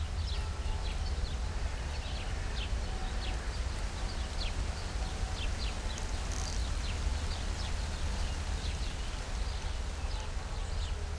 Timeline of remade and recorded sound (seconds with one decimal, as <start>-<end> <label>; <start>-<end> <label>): 0.0-11.2 recorded